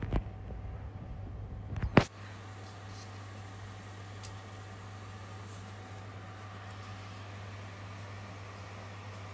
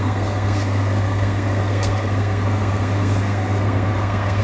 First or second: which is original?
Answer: first